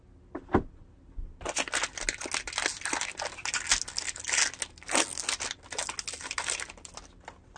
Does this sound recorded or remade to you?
recorded